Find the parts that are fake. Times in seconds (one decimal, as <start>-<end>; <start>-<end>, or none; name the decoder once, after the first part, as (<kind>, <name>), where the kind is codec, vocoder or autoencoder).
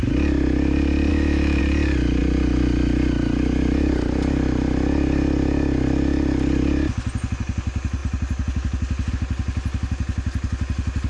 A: 1.1-1.6 (autoencoder, DAC-VAE)